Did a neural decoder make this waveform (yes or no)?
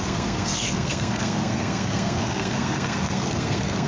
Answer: yes